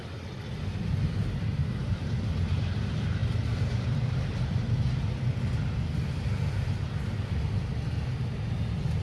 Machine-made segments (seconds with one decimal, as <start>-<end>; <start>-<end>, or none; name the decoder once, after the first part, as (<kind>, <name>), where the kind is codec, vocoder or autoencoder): 1.6-2.1 (vocoder, BigVGAN v2)